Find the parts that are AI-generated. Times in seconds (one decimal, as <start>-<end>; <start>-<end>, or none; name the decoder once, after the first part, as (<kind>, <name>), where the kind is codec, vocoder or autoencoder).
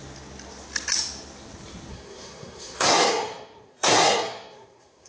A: 1.9-5.1 (codec, SNAC)